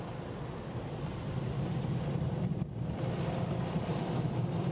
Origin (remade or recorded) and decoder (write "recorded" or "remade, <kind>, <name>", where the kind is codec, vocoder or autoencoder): recorded